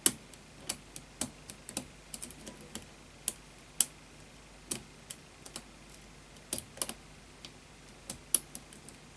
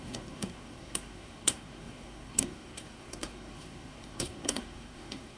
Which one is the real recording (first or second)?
first